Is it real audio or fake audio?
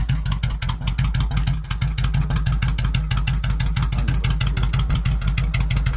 real